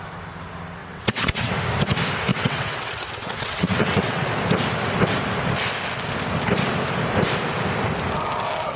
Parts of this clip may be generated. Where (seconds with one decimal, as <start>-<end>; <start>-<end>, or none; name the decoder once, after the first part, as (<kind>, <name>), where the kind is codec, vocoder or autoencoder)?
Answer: 0.8-1.5 (vocoder, WaveNeXt); 2.3-4.3